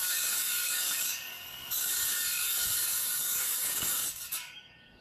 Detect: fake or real fake